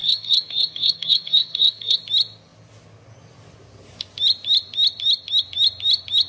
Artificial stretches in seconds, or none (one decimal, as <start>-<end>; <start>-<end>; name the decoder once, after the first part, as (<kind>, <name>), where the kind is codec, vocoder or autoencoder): 0.0-2.0 (codec, SNAC)